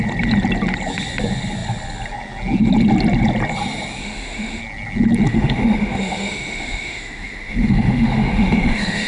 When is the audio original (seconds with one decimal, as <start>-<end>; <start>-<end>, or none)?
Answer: 0.0-4.0; 4.6-5.3